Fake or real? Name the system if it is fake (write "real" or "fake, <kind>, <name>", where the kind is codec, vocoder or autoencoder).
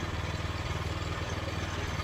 real